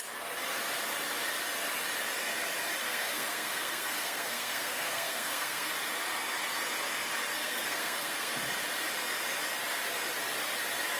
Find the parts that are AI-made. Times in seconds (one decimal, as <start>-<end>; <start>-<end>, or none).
2.8-5.7; 7.3-8.4